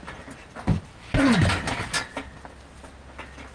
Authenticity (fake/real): real